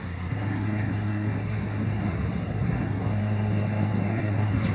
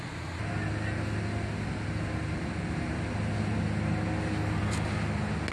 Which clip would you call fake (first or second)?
first